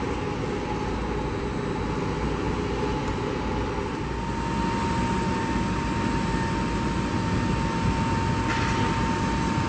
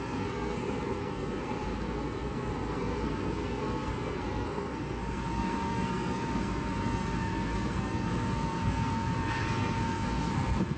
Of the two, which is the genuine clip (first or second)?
first